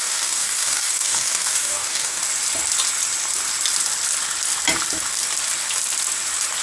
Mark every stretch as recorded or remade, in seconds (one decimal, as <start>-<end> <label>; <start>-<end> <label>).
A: 0.0-2.2 remade; 2.2-6.6 recorded